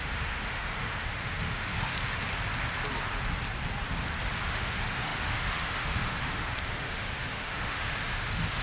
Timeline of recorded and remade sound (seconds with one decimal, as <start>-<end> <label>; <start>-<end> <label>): 0.0-1.9 remade; 1.9-4.4 recorded; 4.4-8.6 remade

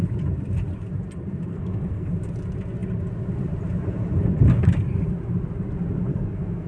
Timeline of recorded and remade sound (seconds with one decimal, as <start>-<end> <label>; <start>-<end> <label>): 0.0-1.5 recorded; 1.5-2.1 remade; 2.1-6.1 recorded; 6.1-6.7 remade

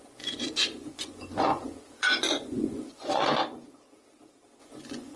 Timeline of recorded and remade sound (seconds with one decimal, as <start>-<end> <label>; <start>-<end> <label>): 0.0-3.4 remade; 3.4-4.6 recorded; 4.6-5.2 remade